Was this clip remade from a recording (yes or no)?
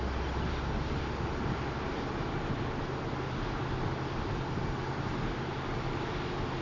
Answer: no